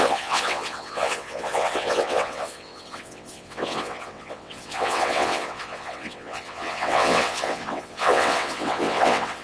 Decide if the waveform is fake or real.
fake